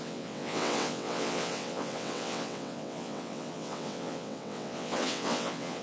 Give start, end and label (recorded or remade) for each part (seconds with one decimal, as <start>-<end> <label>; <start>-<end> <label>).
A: 0.0-5.8 remade